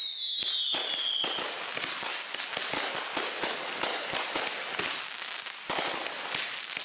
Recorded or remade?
recorded